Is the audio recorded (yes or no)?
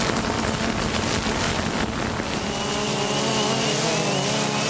yes